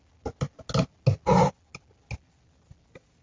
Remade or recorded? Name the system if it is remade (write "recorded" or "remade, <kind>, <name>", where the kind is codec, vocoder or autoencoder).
recorded